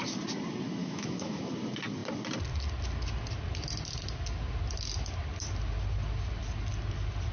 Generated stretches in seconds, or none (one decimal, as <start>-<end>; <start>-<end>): 0.8-1.5

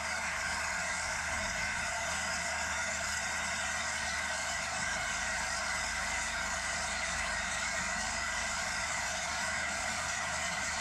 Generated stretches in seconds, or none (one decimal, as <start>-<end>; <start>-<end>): 0.0-3.2; 3.8-10.8

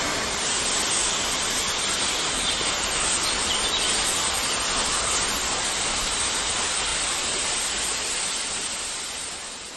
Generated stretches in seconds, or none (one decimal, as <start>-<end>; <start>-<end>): none

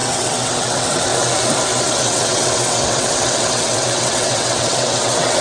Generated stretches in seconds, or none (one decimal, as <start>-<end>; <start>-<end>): 0.0-1.1; 1.8-5.4

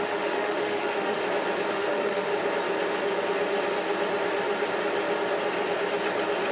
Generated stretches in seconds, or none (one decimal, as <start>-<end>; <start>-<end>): 0.0-1.2; 1.7-2.3

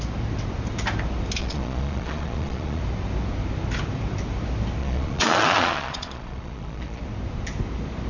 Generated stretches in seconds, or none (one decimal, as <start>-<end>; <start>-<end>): 1.4-2.8; 4.8-7.0

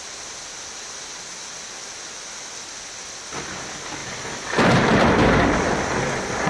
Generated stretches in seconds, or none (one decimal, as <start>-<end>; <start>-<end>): 4.0-6.5